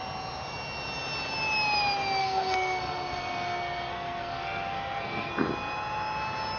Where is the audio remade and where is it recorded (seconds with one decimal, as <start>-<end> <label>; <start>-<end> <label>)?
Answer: 0.0-2.2 recorded; 2.2-5.3 remade; 5.3-6.6 recorded